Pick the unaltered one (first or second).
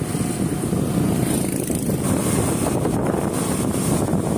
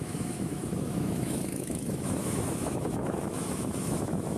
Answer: first